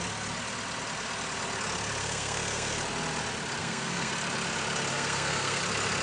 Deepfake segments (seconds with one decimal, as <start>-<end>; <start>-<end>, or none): 2.0-2.8; 3.6-4.1; 4.9-5.6

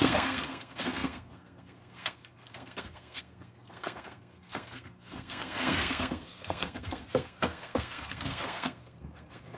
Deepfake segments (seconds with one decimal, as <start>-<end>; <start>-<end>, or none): 0.0-9.6